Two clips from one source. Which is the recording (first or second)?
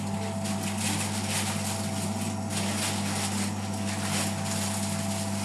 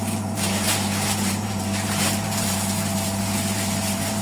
first